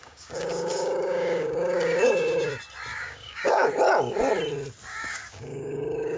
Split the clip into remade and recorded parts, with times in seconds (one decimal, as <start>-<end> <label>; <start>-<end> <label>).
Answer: 0.0-2.5 remade; 2.5-2.9 recorded; 2.9-3.7 remade; 3.7-4.9 recorded; 4.9-6.2 remade